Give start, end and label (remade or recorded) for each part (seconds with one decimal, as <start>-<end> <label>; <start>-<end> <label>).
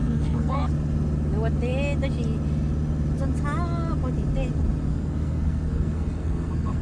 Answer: 0.0-0.7 remade; 0.7-4.9 recorded; 4.9-6.8 remade